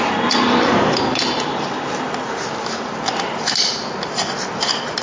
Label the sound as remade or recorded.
recorded